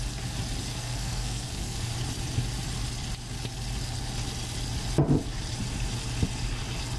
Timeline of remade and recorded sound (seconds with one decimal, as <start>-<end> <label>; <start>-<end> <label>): 0.0-0.7 recorded; 0.7-1.9 remade; 1.9-7.0 recorded